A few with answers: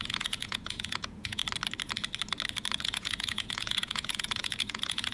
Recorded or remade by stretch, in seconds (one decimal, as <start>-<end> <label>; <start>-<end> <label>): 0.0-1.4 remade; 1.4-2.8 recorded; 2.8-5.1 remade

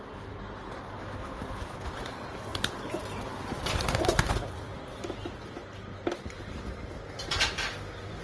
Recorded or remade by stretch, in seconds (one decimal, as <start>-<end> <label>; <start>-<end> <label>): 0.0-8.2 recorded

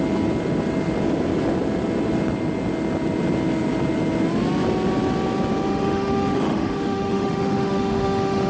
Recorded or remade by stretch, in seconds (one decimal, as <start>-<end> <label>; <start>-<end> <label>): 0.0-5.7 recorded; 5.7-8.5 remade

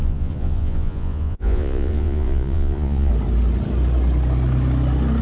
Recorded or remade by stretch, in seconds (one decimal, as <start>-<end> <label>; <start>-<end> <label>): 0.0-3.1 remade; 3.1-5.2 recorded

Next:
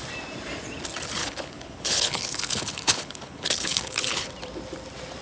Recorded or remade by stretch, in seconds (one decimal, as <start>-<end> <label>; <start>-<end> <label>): 0.0-1.2 recorded; 1.2-4.3 remade; 4.3-5.2 recorded

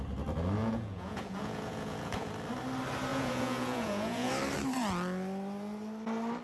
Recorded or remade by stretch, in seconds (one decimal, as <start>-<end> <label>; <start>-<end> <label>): 0.0-0.6 recorded; 0.6-2.3 remade; 2.3-3.1 recorded; 3.1-4.3 remade; 4.3-6.4 recorded